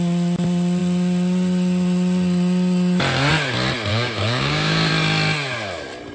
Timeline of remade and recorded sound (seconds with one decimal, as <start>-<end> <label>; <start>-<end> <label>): 0.0-3.9 recorded; 3.9-4.9 remade; 4.9-6.1 recorded